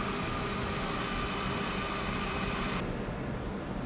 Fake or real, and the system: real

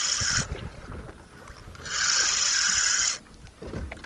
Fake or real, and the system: real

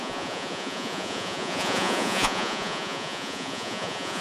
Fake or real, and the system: fake, vocoder, Vocos